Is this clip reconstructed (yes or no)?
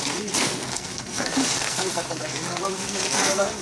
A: yes